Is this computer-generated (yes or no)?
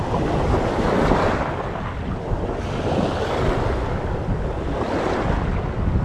no